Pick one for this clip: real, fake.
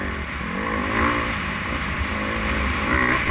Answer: real